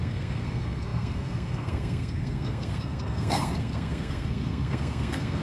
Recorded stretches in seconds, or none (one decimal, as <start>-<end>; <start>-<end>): none